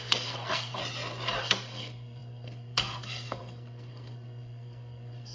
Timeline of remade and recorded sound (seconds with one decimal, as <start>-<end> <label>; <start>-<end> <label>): 0.0-0.8 remade; 0.8-1.4 recorded; 1.4-5.3 remade